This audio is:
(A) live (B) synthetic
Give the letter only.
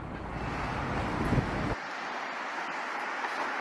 A